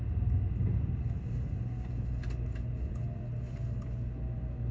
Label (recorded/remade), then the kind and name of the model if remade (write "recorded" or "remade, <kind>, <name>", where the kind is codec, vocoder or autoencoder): recorded